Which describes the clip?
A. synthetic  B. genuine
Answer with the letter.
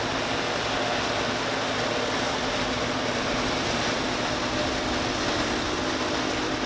B